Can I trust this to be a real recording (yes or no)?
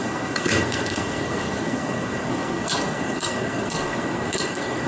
no